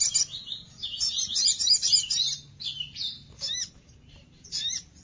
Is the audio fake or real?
fake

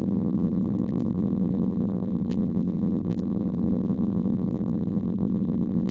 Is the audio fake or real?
fake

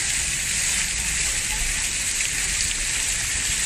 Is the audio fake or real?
fake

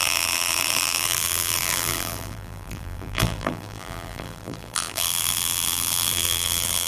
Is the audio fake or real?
fake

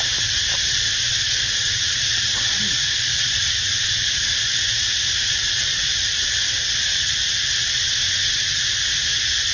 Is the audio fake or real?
fake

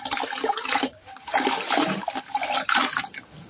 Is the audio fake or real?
fake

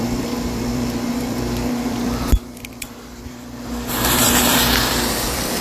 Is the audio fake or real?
fake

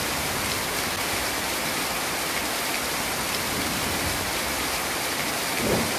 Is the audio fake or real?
real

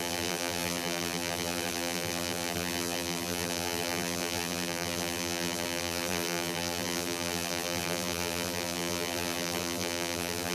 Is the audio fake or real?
fake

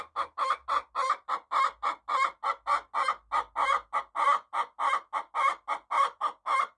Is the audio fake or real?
real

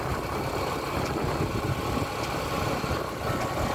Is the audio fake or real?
real